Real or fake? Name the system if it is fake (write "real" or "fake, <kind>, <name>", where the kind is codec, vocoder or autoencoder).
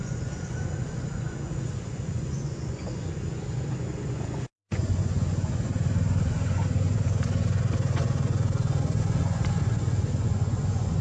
fake, vocoder, Vocos